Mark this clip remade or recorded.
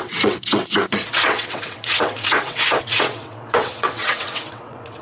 remade